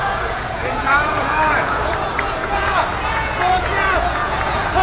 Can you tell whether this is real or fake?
fake